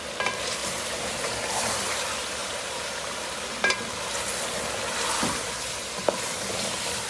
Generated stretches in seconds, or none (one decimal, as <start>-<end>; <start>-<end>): 0.6-1.8; 2.4-3.5